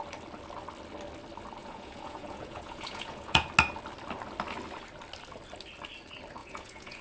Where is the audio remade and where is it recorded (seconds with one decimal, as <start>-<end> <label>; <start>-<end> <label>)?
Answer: 0.0-1.6 recorded; 1.6-3.5 remade; 3.5-6.4 recorded; 6.4-7.0 remade

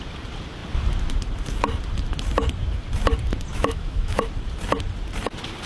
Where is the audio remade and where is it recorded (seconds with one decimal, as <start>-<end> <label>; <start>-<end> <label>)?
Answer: 0.0-3.5 recorded; 3.5-4.2 remade; 4.2-5.7 recorded

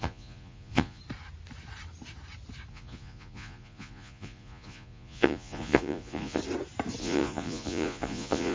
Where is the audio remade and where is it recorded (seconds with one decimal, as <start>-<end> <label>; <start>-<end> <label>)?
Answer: 0.0-1.0 remade; 1.0-2.7 recorded; 2.7-6.4 remade; 6.4-7.0 recorded; 7.0-8.5 remade

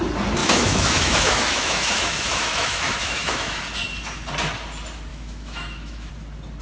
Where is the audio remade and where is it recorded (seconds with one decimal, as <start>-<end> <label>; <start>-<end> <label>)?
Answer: 0.0-0.4 recorded; 0.4-3.6 remade; 3.6-5.1 recorded; 5.1-6.1 remade; 6.1-6.6 recorded

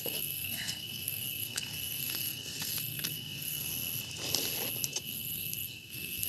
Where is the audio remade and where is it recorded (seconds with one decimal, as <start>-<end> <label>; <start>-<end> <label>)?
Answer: 0.0-3.7 remade; 3.7-4.9 recorded; 4.9-6.3 remade